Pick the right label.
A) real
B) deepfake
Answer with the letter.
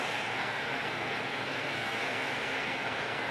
B